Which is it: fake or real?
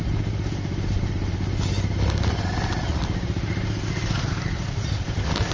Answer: real